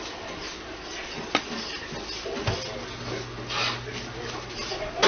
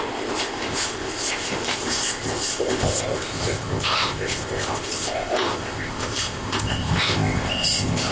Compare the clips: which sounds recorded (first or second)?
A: first